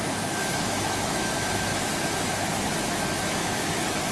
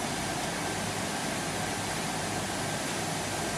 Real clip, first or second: second